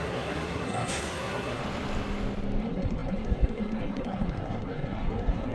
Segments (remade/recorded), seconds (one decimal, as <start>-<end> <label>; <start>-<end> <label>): 0.0-1.6 remade; 1.6-2.6 recorded; 2.6-5.5 remade